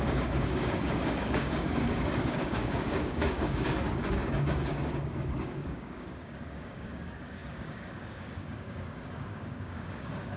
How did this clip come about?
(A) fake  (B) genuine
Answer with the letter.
A